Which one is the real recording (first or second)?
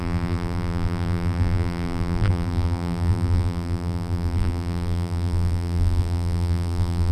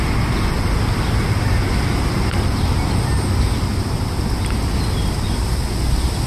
second